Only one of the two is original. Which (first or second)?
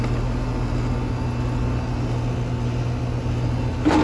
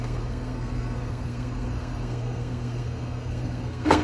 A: first